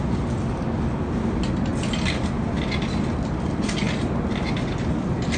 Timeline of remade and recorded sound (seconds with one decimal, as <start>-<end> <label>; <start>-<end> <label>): 0.0-5.4 recorded